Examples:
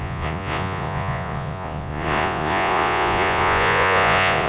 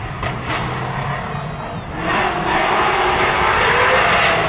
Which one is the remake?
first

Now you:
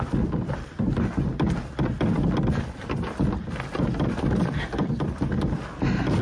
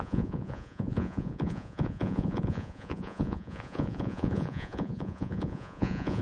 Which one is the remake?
second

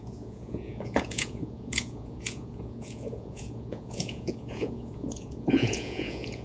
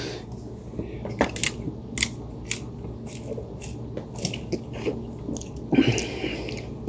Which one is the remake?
first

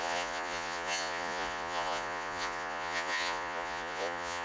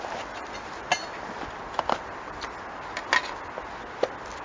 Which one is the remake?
first